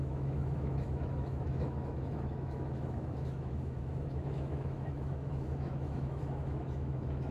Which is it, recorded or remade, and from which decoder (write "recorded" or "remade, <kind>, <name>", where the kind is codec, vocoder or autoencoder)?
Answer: remade, autoencoder, DAC-VAE